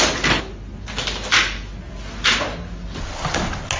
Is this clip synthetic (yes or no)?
no